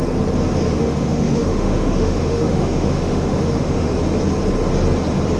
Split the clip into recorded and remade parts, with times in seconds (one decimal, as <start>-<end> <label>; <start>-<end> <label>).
0.0-0.8 recorded; 0.8-4.0 remade; 4.0-5.4 recorded